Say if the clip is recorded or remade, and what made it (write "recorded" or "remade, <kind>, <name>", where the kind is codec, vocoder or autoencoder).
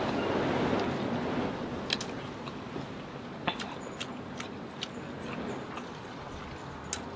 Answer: recorded